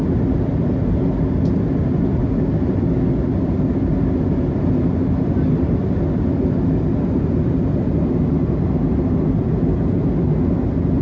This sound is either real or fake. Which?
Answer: real